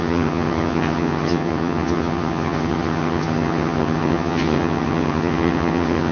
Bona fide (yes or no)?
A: no